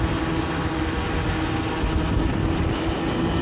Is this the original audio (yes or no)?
yes